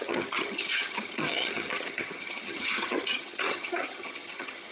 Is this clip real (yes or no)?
no